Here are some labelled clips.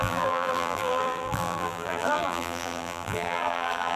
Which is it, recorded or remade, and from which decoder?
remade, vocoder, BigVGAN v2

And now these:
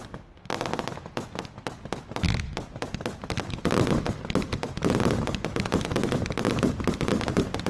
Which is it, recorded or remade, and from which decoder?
recorded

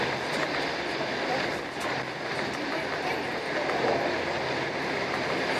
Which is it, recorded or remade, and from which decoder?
recorded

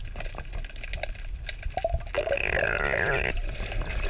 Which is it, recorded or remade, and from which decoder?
remade, vocoder, BigVGAN v2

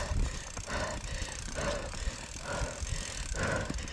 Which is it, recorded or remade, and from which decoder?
recorded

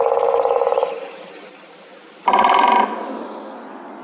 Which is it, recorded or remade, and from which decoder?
recorded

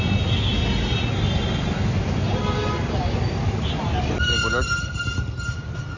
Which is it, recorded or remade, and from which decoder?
recorded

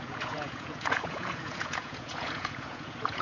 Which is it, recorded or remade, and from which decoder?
remade, vocoder, Vocos